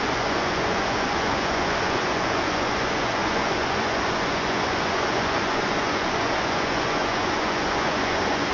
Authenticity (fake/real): fake